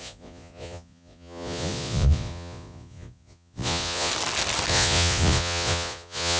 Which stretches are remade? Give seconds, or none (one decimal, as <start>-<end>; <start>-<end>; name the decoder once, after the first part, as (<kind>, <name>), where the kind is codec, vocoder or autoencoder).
0.0-4.1 (vocoder, Vocos); 4.7-6.4